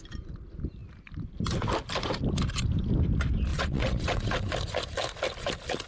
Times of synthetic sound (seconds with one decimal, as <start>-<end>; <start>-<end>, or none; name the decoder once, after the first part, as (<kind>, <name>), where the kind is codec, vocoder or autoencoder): 3.5-4.5 (vocoder, WaveNeXt)